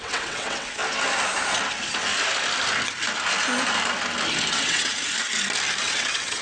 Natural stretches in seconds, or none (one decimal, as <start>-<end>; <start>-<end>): 0.8-4.5; 4.9-5.8